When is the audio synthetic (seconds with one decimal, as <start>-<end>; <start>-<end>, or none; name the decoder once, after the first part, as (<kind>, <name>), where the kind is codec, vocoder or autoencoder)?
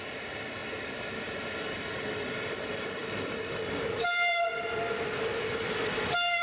none